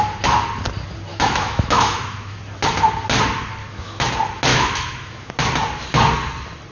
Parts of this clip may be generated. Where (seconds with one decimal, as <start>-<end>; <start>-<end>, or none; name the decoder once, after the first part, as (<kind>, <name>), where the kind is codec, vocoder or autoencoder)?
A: 1.1-2.4 (autoencoder, DAC-VAE); 3.6-4.1; 4.5-5.3